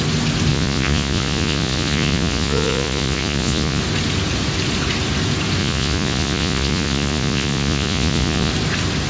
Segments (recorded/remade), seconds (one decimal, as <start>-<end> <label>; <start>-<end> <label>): 0.0-0.5 recorded; 0.5-3.8 remade; 3.8-5.6 recorded; 5.6-8.5 remade; 8.5-9.1 recorded